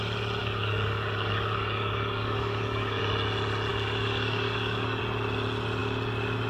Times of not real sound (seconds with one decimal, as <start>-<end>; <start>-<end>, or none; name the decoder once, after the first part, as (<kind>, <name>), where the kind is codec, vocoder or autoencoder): 0.4-3.0 (codec, DAC); 3.7-5.0